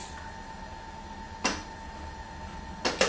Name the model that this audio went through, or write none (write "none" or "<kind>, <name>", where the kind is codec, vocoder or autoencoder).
none